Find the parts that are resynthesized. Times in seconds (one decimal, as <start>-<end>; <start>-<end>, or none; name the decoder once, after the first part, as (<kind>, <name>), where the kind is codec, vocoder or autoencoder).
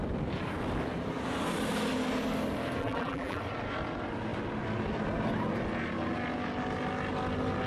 2.8-3.4 (vocoder, BigVGAN v2)